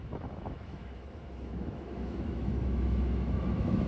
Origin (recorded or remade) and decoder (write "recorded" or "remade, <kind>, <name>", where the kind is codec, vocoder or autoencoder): remade, autoencoder, DAC-VAE